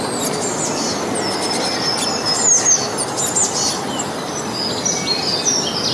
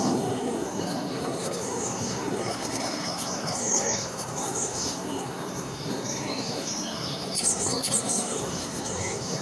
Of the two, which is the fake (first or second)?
second